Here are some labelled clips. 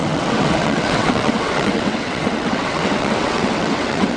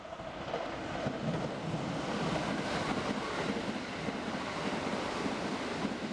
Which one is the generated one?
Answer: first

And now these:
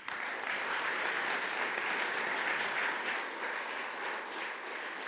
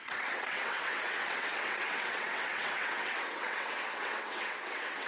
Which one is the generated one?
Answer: second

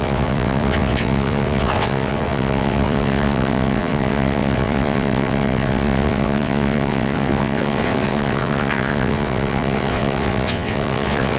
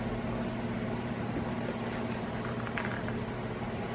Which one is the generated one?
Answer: first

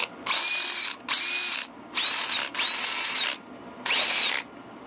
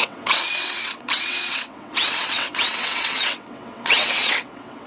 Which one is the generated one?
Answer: second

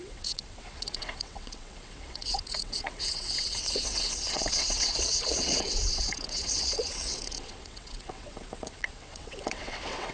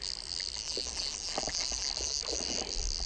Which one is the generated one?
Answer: first